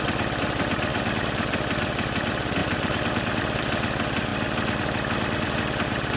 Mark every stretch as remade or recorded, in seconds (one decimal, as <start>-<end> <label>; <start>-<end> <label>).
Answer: 0.0-0.9 recorded; 0.9-1.5 remade; 1.5-2.6 recorded; 2.6-3.6 remade; 3.6-6.2 recorded